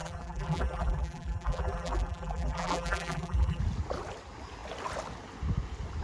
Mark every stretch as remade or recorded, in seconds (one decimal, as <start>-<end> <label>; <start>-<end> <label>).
0.0-3.6 remade; 3.6-6.0 recorded